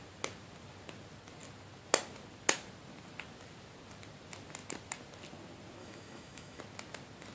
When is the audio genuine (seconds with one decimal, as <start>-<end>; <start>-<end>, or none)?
0.0-5.8; 6.6-7.3